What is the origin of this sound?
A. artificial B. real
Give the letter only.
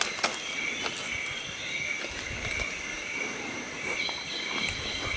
B